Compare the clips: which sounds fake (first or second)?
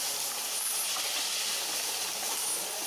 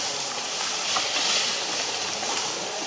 second